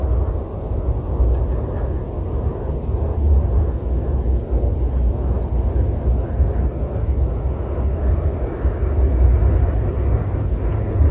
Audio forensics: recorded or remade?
recorded